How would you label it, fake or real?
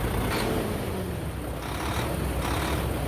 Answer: real